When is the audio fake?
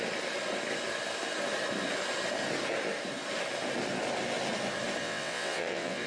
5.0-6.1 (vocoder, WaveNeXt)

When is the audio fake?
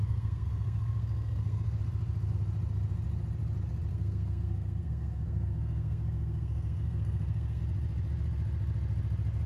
0.0-1.8 (codec, SNAC); 3.9-7.6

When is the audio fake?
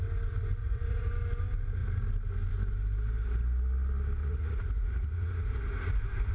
0.6-1.1 (vocoder, Vocos); 4.2-6.3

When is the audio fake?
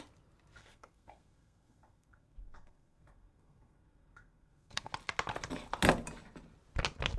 0.6-4.9 (codec, SNAC)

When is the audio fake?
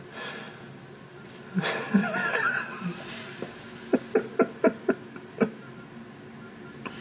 none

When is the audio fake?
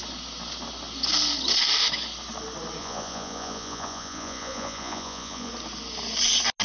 2.8-5.5 (vocoder, Vocos)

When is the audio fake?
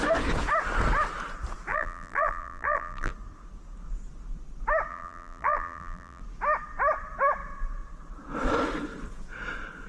1.7-3.1 (vocoder, BigVGAN v2); 4.9-6.2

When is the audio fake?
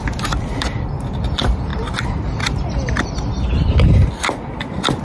none